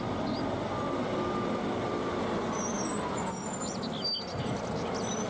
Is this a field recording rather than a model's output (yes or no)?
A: yes